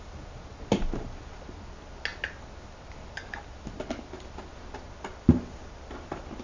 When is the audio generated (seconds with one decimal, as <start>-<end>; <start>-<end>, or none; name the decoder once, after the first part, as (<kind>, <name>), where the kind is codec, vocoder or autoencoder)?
none